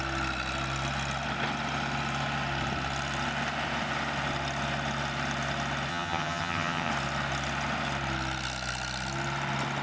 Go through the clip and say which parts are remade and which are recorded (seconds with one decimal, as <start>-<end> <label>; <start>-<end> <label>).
0.0-5.9 recorded; 5.9-6.9 remade; 6.9-9.8 recorded